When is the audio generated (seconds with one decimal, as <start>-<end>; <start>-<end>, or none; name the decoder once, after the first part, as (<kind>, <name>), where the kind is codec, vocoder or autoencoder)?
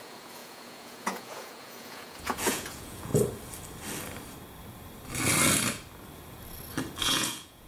0.0-3.1 (vocoder, Vocos); 7.0-7.7